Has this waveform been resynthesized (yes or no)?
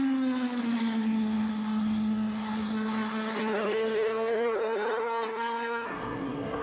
yes